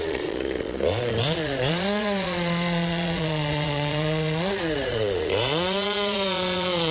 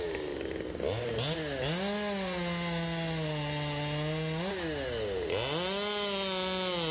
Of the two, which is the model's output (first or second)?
first